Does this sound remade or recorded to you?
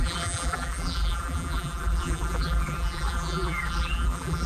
remade